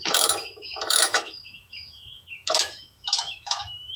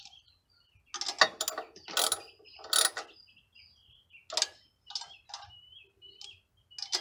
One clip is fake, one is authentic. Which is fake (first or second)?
first